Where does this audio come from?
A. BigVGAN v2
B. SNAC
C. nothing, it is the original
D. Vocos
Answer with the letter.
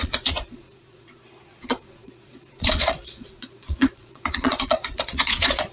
D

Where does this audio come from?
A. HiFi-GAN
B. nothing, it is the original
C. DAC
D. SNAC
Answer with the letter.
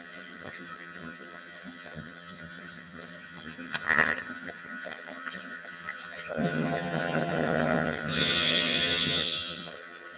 A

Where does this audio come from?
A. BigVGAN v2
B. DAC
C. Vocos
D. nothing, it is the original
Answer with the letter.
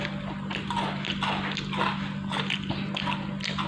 D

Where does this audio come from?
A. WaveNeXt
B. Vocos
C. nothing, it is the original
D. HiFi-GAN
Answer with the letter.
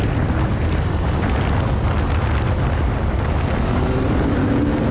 C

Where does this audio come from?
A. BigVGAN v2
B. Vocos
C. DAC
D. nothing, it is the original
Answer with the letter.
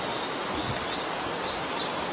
D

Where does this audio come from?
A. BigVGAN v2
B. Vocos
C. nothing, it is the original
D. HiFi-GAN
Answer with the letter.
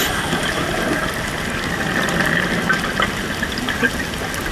C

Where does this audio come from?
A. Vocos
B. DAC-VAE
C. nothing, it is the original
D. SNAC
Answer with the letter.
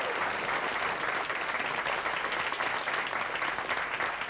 C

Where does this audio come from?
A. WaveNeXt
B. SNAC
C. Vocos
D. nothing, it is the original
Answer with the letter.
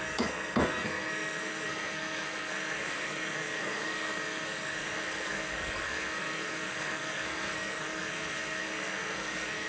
B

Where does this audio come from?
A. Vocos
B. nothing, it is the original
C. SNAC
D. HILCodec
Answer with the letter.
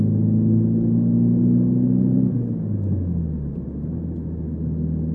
B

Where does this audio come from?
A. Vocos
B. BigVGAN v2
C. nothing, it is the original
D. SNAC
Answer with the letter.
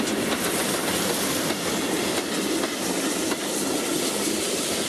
C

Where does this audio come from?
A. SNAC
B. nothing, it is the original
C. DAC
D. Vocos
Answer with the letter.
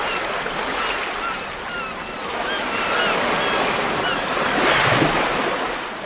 B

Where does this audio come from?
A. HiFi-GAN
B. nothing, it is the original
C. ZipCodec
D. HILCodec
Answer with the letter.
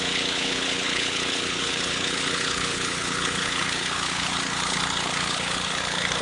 D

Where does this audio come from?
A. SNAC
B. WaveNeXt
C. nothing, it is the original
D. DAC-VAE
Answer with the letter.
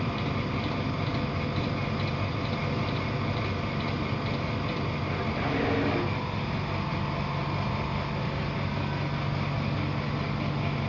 C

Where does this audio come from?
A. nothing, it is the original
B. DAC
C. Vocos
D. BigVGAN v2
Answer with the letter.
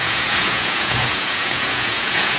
C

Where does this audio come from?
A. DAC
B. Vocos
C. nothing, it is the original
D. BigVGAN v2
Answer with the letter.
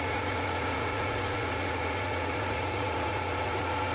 B